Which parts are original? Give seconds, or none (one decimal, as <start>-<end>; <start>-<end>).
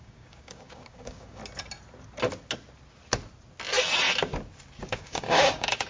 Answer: 1.4-4.9